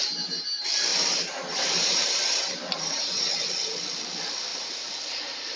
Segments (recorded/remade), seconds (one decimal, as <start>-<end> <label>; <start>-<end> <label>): 0.0-0.9 recorded; 0.9-3.3 remade; 3.3-4.5 recorded; 4.5-5.6 remade